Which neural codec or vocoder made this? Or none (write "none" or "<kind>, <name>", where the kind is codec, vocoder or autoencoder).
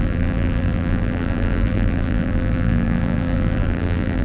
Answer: vocoder, BigVGAN v2